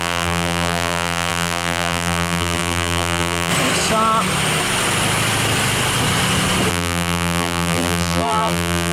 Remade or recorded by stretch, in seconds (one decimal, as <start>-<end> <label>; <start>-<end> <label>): 0.0-3.5 remade; 3.5-6.7 recorded; 6.7-8.9 remade